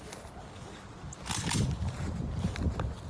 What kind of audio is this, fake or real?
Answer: real